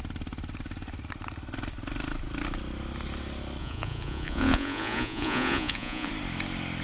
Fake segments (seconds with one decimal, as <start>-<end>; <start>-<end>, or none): 3.6-6.1